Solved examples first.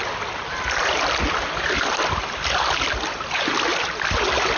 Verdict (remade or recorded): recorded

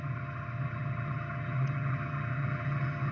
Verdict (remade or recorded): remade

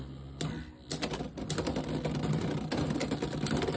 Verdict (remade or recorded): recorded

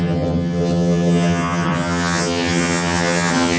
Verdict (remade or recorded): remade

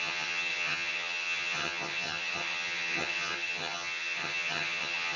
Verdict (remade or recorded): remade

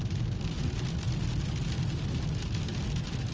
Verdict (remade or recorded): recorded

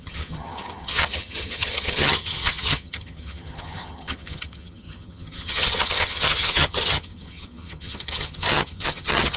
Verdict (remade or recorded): remade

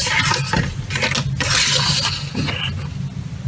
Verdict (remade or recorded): recorded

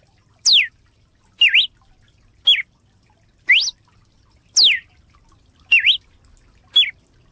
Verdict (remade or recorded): recorded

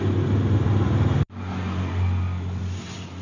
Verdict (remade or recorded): recorded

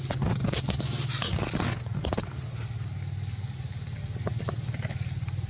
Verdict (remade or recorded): recorded